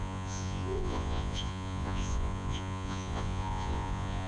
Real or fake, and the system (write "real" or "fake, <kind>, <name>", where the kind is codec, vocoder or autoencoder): fake, vocoder, Vocos